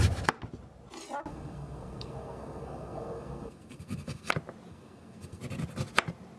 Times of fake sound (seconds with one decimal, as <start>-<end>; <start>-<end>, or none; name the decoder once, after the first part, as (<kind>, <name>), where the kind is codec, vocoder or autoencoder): 1.3-4.3 (codec, SNAC); 4.7-5.4